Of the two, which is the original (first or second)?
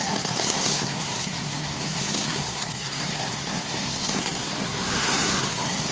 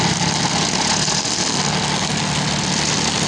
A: second